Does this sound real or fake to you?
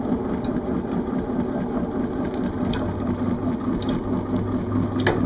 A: real